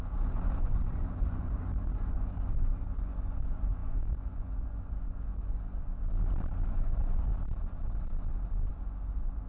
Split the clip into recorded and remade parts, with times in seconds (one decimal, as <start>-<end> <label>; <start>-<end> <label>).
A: 0.0-5.9 remade; 5.9-6.7 recorded; 6.7-7.3 remade; 7.3-8.7 recorded; 8.7-9.5 remade